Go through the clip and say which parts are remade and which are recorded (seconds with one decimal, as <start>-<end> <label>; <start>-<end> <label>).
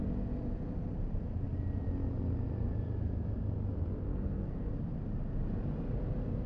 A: 0.0-4.1 recorded; 4.1-4.7 remade; 4.7-6.5 recorded